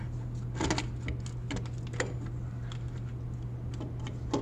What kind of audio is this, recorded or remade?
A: recorded